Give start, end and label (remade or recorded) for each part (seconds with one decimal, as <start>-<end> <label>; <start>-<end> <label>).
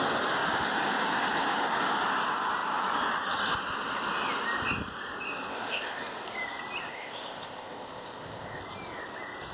0.0-5.5 recorded; 5.5-6.0 remade; 6.0-6.9 recorded; 6.9-8.6 remade; 8.6-9.5 recorded